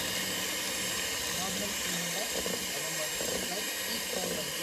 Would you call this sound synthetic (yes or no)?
no